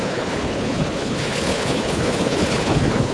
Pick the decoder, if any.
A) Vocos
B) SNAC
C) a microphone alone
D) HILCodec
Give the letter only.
D